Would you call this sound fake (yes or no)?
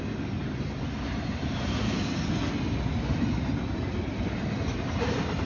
no